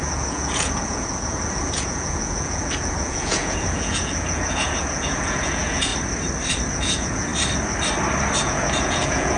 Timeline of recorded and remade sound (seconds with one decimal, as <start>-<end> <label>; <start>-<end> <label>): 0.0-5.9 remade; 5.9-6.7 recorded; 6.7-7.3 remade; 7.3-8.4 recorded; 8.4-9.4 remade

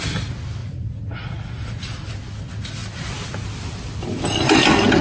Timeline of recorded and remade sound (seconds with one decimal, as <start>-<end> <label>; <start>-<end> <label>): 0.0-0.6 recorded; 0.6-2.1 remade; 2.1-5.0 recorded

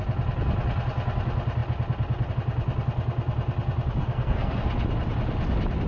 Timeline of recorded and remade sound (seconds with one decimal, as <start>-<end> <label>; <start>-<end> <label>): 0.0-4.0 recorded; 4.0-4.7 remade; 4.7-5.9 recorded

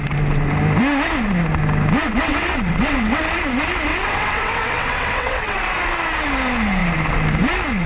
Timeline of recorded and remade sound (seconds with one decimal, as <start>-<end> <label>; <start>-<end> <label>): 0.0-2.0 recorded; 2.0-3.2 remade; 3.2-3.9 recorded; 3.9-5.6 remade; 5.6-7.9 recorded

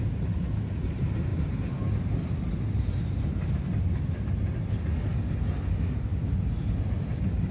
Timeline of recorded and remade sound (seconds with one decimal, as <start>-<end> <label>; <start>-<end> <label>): 0.0-7.5 recorded

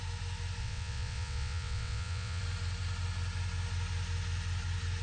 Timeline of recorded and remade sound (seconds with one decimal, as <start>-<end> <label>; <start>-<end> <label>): 0.0-0.6 recorded; 0.6-2.4 remade; 2.4-5.0 recorded